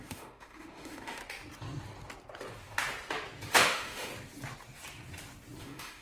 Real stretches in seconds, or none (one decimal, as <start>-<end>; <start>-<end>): 1.2-3.5; 4.1-5.6